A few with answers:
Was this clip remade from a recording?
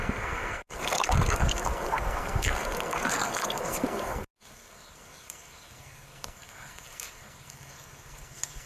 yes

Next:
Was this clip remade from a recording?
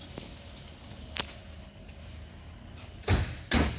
no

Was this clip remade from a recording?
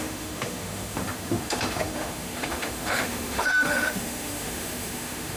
yes